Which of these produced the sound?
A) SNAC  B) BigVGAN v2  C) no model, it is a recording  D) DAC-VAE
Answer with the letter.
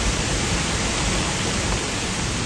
B